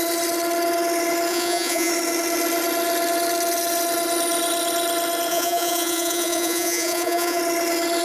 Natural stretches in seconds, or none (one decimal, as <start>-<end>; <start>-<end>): 0.0-1.3; 1.9-5.3; 7.4-8.0